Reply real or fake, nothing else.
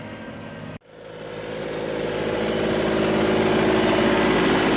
real